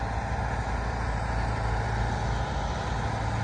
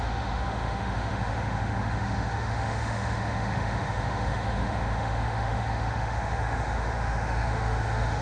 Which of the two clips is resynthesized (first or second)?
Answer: second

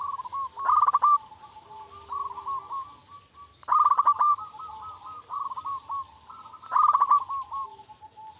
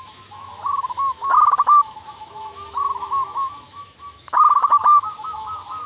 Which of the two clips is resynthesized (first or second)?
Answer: second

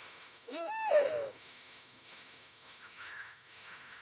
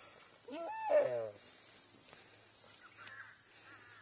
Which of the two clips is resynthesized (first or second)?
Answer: first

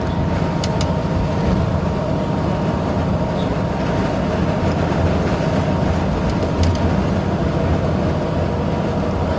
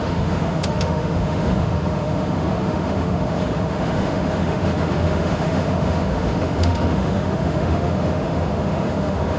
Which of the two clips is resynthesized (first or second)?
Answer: second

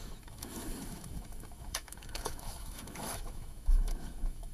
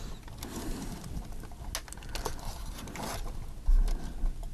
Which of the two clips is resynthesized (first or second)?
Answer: first